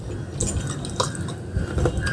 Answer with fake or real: real